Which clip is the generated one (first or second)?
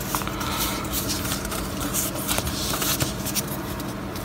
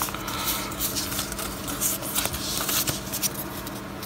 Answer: first